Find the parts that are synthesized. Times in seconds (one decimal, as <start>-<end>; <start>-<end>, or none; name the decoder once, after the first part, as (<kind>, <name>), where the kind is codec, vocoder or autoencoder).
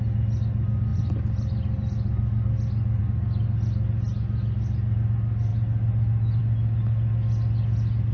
none